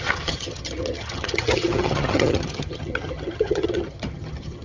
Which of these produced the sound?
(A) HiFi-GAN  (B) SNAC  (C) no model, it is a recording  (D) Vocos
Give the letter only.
A